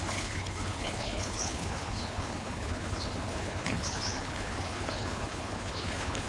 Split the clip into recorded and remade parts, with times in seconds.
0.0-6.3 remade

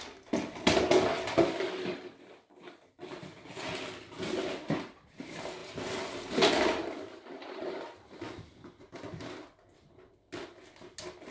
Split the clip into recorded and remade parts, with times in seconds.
0.0-11.3 recorded

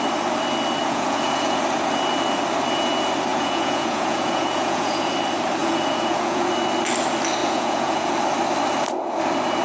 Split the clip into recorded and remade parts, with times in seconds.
0.0-0.8 recorded; 0.8-1.6 remade; 1.6-3.3 recorded; 3.3-5.1 remade; 5.1-5.6 recorded; 5.6-6.5 remade; 6.5-7.4 recorded; 7.4-8.1 remade; 8.1-9.6 recorded

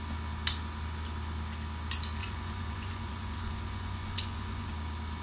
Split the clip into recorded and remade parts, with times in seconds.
0.0-2.2 recorded; 2.2-4.7 remade; 4.7-5.2 recorded

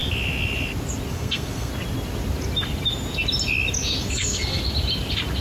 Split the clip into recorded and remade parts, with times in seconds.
0.0-1.1 recorded; 1.1-1.7 remade; 1.7-4.0 recorded; 4.0-4.6 remade; 4.6-5.4 recorded

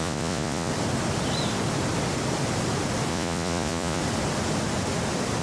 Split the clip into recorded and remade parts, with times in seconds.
0.0-0.7 remade; 0.7-3.1 recorded; 3.1-4.0 remade; 4.0-5.4 recorded

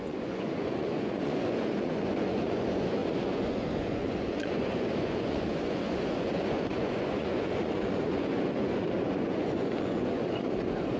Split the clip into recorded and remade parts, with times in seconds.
0.0-11.0 remade

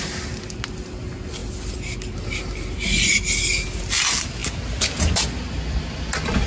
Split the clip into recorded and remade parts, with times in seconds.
0.0-6.5 recorded